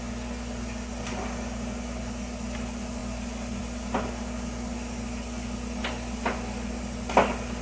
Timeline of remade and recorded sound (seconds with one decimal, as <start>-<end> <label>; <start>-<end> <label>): 0.0-7.6 recorded